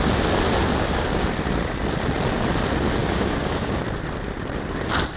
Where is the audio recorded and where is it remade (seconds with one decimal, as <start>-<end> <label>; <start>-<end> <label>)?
0.0-3.0 recorded; 3.0-3.8 remade; 3.8-5.2 recorded